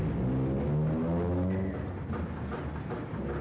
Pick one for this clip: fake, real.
real